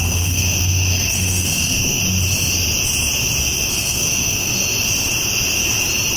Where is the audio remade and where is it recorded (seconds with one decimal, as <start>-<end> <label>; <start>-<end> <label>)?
0.0-2.0 remade; 2.0-3.7 recorded; 3.7-4.6 remade; 4.6-6.2 recorded